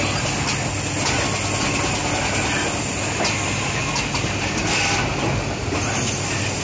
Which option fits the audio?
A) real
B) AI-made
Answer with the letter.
A